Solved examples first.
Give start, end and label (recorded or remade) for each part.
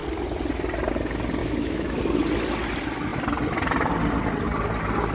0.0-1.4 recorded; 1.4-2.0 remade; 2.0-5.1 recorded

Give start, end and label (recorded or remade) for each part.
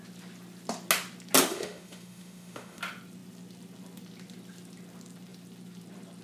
0.0-1.5 recorded; 1.5-2.8 remade; 2.8-6.2 recorded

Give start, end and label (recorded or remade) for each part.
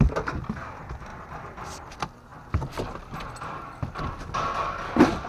0.0-5.3 recorded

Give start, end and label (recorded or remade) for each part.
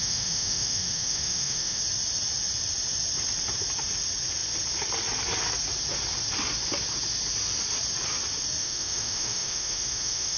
0.0-1.8 remade; 1.8-8.6 recorded; 8.6-10.4 remade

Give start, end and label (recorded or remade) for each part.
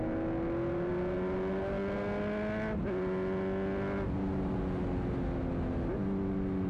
0.0-6.7 recorded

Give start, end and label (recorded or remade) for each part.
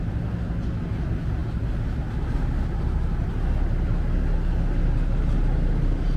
0.0-6.2 recorded